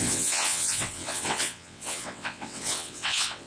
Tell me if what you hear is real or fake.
fake